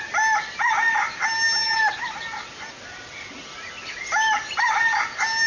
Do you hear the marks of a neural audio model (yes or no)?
no